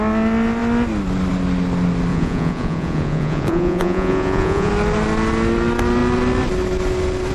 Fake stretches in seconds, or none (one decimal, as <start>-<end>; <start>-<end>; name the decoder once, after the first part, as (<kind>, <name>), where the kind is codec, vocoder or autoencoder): 2.1-4.7 (vocoder, Vocos)